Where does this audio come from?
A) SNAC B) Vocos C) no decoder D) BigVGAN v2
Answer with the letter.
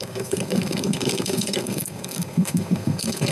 A